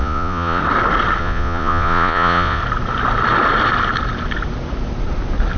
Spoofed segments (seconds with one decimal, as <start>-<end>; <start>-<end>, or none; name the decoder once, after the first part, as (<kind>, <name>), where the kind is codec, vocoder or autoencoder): 0.0-0.6 (vocoder, Vocos); 1.2-2.6